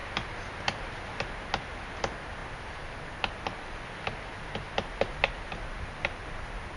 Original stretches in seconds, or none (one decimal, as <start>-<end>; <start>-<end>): 0.0-6.8